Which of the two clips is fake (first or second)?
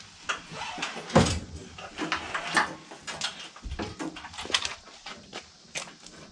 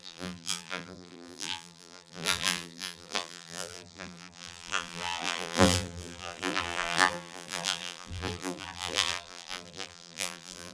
second